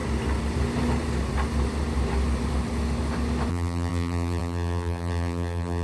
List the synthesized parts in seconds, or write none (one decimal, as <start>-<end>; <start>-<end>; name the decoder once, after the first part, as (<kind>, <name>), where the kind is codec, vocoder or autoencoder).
3.5-5.8 (vocoder, BigVGAN v2)